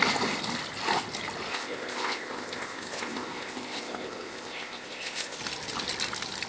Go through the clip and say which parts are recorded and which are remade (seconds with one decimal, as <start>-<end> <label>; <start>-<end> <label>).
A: 0.0-1.5 recorded; 1.5-5.4 remade; 5.4-6.5 recorded